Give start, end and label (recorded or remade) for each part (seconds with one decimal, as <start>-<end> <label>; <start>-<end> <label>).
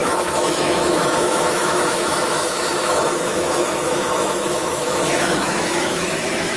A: 0.0-6.6 remade